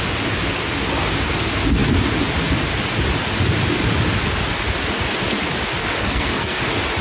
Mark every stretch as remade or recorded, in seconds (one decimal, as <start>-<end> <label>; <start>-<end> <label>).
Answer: 0.0-5.8 recorded; 5.8-6.6 remade; 6.6-7.0 recorded